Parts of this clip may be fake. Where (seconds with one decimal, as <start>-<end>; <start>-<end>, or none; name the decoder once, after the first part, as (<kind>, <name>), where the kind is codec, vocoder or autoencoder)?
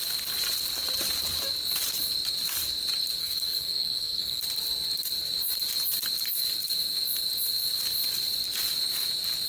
3.2-4.4 (codec, SNAC)